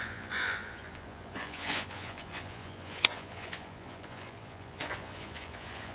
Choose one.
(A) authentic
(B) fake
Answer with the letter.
B